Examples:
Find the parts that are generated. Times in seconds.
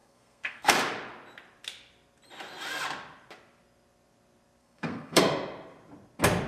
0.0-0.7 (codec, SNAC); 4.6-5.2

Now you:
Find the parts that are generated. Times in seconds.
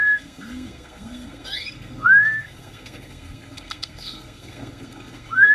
0.0-5.5 (codec, SNAC)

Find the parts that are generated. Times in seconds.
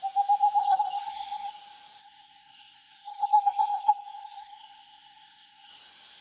0.6-1.5 (codec, SNAC); 2.0-5.7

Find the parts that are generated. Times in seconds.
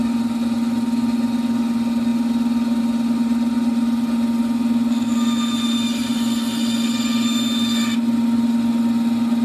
none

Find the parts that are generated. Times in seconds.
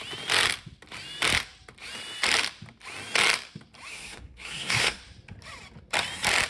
3.9-5.0 (codec, SNAC)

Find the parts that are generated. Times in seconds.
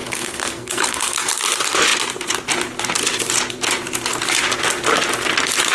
0.0-1.3 (codec, SNAC)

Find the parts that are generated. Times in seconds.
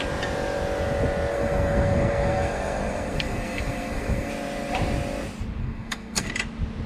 1.3-4.3 (codec, SNAC); 5.6-6.3